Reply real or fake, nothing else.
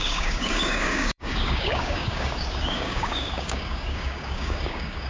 fake